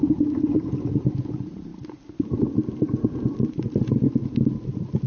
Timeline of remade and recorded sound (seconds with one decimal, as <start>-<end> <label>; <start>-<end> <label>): 0.0-1.7 remade; 1.7-5.1 recorded